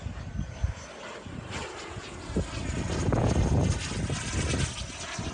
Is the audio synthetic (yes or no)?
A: no